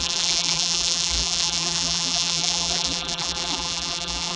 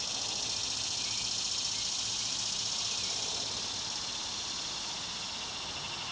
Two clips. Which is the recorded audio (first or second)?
second